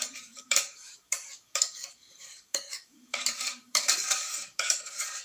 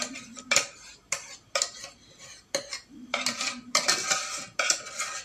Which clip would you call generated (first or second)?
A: first